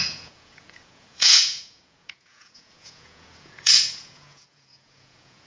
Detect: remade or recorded remade